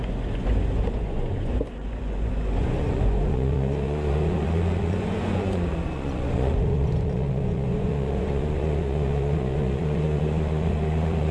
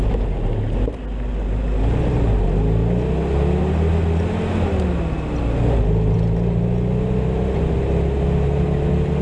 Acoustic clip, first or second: second